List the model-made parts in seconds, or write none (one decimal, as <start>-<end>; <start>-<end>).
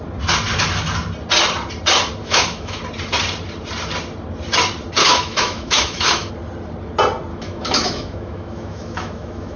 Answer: 2.2-2.8; 5.0-6.3; 7.3-9.6